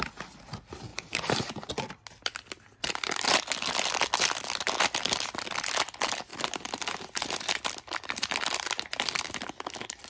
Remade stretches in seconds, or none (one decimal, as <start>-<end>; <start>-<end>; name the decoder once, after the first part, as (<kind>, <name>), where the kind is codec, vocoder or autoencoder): none